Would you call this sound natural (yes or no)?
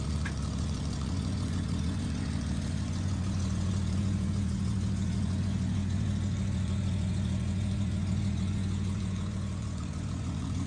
no